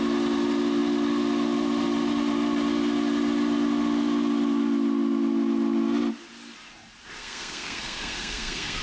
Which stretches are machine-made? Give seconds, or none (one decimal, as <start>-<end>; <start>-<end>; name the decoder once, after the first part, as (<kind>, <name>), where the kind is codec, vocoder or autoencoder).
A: 7.2-8.8 (codec, SNAC)